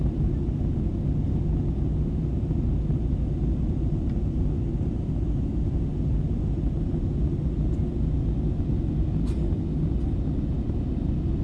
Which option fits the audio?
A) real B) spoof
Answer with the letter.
A